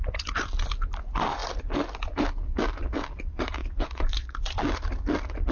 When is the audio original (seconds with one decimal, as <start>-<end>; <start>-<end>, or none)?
0.0-3.6; 4.6-5.5